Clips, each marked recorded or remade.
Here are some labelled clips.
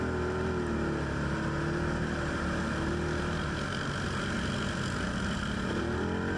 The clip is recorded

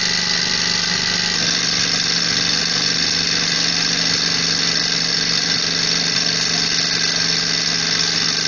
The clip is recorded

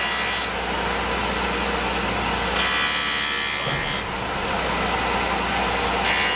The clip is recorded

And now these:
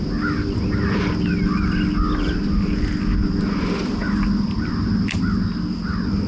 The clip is recorded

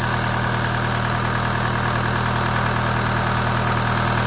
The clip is recorded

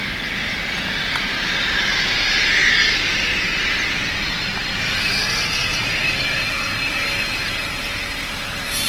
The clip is recorded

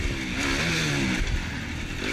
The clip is recorded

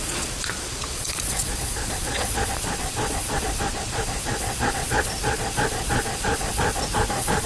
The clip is remade